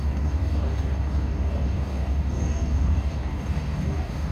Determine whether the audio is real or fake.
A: fake